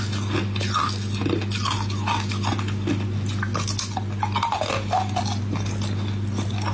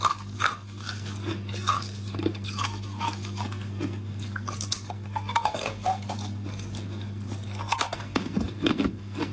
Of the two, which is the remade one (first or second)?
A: second